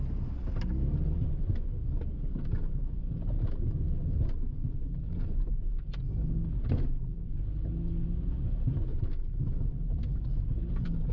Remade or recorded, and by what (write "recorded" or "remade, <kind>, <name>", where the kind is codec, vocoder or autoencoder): recorded